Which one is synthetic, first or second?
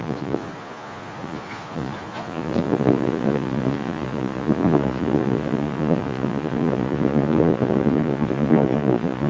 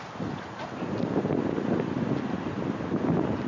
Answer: first